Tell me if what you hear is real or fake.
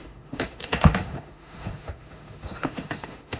fake